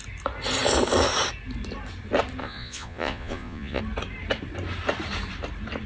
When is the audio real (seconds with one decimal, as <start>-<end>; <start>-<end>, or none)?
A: 0.0-2.4; 3.8-5.9